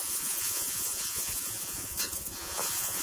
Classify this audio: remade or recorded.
remade